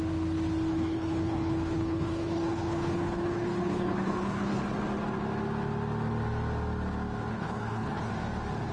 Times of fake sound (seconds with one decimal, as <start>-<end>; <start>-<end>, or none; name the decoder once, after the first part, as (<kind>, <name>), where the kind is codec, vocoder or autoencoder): 0.7-4.6 (codec, HILCodec); 7.3-8.1